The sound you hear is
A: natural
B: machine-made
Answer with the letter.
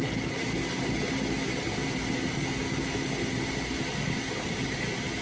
A